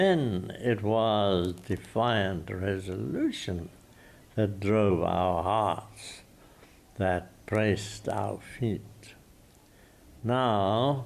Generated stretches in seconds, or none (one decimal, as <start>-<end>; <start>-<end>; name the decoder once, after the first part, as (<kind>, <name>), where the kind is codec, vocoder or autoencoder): none